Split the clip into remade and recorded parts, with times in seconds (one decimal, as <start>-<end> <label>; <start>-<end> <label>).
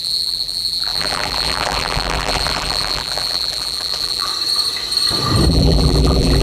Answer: 0.0-4.3 remade; 4.3-5.5 recorded; 5.5-6.4 remade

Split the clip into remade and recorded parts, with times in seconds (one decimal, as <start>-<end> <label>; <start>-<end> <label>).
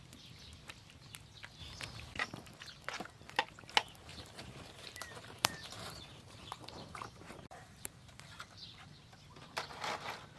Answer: 0.0-4.1 recorded; 4.1-9.0 remade; 9.0-10.4 recorded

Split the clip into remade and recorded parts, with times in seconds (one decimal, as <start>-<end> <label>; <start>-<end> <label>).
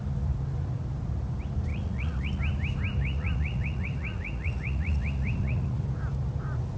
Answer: 0.0-1.7 recorded; 1.7-2.4 remade; 2.4-3.0 recorded; 3.0-5.8 remade; 5.8-6.8 recorded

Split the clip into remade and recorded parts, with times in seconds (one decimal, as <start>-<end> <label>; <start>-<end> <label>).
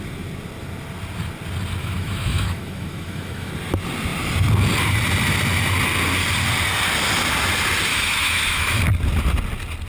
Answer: 0.0-1.8 recorded; 1.8-3.5 remade; 3.5-7.9 recorded; 7.9-8.8 remade; 8.8-9.9 recorded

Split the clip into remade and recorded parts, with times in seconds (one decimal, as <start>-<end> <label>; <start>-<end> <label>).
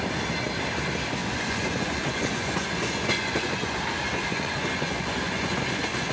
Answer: 0.0-1.2 recorded; 1.2-3.8 remade; 3.8-4.3 recorded; 4.3-6.1 remade